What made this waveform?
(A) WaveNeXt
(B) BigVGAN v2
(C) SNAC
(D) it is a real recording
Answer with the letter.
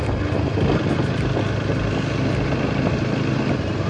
D